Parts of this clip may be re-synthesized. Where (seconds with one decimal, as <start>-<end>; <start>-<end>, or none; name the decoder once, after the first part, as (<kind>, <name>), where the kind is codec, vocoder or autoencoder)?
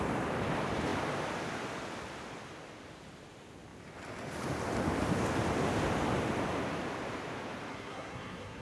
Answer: 7.7-8.6 (codec, SNAC)